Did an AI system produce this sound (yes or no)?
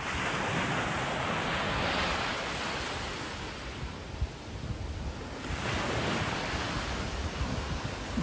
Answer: no